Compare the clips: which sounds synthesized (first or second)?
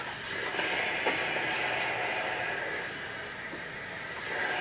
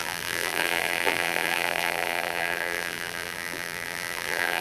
second